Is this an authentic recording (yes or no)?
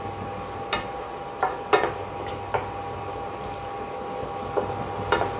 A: yes